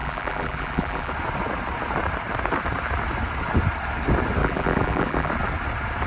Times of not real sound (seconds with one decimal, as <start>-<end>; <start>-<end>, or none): 0.0-1.1; 4.4-5.3